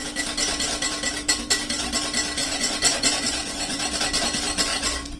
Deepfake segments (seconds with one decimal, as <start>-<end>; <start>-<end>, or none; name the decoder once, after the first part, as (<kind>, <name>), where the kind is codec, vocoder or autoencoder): 2.4-3.8 (vocoder, Vocos); 4.7-5.2